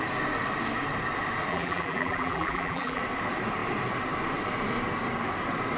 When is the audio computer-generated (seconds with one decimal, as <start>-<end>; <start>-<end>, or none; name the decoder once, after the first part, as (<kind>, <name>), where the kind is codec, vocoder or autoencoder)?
1.5-3.0 (vocoder, BigVGAN v2)